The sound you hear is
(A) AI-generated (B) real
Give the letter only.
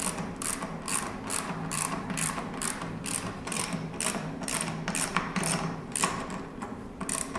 A